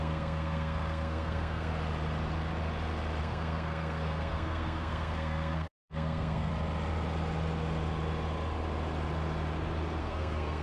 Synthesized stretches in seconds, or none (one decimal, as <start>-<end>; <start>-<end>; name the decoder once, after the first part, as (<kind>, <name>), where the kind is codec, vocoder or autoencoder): 0.0-1.7 (codec, SNAC); 3.2-6.5; 10.0-10.6